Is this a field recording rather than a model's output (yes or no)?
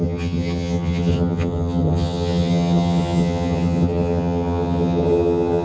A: no